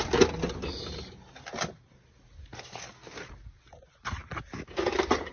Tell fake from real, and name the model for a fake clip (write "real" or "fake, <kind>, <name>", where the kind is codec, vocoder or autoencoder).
real